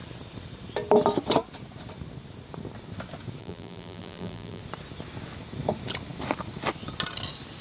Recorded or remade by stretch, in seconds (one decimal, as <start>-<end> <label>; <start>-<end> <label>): 0.0-3.4 recorded; 3.4-4.6 remade; 4.6-7.6 recorded